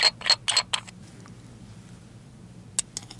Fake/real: real